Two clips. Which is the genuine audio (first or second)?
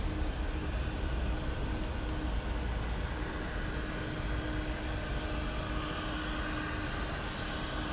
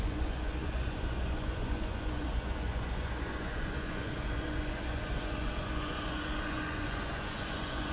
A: first